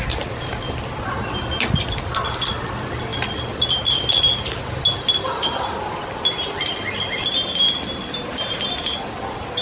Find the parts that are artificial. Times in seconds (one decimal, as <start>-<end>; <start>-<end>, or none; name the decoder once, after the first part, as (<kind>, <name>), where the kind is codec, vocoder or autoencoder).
none